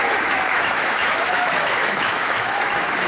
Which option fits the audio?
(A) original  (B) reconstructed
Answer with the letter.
B